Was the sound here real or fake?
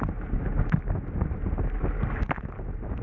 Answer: real